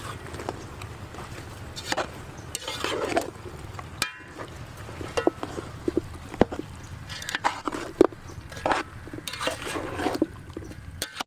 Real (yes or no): yes